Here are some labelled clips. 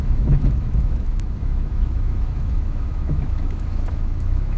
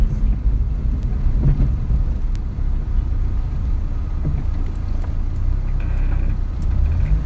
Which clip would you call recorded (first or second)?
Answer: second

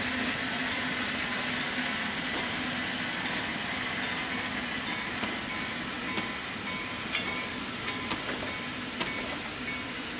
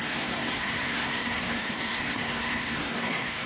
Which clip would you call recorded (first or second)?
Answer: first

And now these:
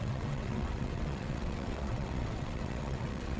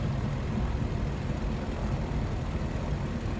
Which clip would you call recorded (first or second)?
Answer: second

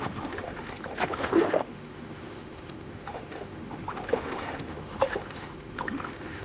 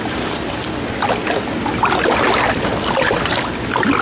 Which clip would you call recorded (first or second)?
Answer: second